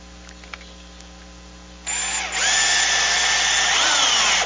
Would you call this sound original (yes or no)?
yes